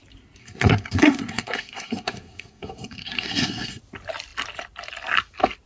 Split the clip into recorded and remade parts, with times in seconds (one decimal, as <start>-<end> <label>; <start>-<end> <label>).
0.0-0.4 recorded; 0.4-3.8 remade; 3.8-5.7 recorded